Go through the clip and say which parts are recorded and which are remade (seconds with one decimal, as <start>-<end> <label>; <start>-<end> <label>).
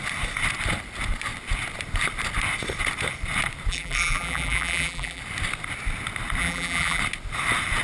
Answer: 0.0-3.7 recorded; 3.7-5.2 remade; 5.2-6.4 recorded; 6.4-7.0 remade; 7.0-7.8 recorded